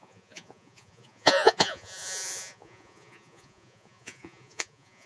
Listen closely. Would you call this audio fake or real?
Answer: fake